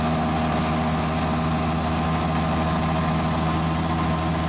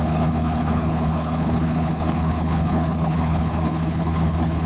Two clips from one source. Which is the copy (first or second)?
second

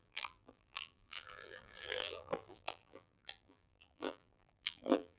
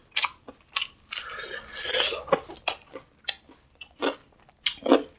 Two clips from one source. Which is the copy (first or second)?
first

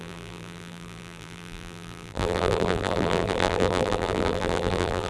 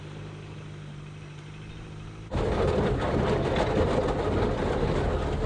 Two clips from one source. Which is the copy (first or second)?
first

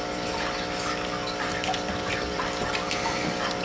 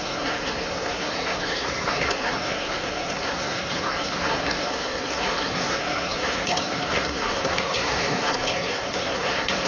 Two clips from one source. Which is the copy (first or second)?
second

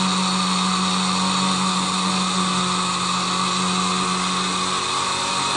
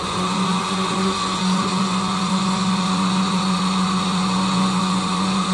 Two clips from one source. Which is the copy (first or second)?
second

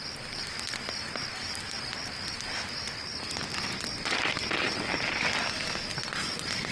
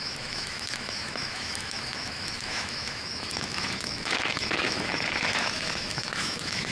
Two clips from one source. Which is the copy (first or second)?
second